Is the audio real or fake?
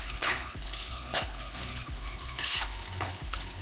fake